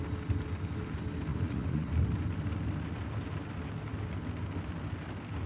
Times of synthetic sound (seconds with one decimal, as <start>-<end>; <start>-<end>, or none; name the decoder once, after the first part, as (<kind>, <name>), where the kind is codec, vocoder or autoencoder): 1.3-1.9 (vocoder, Vocos)